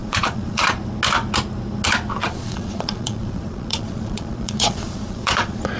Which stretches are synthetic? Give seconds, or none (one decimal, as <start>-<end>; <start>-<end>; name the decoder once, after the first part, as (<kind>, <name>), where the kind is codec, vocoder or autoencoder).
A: 0.0-0.8 (vocoder, Vocos); 2.1-5.8